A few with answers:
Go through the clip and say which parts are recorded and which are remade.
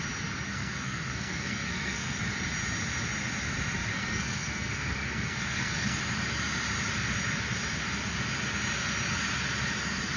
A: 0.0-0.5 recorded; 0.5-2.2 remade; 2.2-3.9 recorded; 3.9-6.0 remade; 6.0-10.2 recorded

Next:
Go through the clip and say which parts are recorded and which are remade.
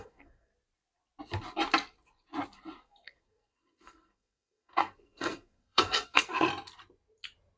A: 0.0-0.5 remade; 0.5-2.8 recorded; 2.8-6.5 remade; 6.5-7.6 recorded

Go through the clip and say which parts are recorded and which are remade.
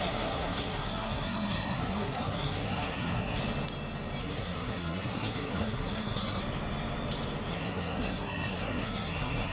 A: 0.0-3.4 remade; 3.4-4.2 recorded; 4.2-6.4 remade; 6.4-7.5 recorded; 7.5-9.5 remade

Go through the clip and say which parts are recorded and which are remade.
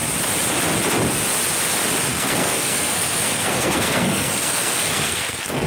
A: 0.0-2.1 recorded; 2.1-5.7 remade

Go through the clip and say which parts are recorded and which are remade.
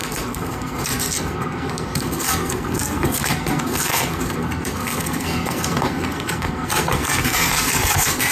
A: 0.0-8.3 remade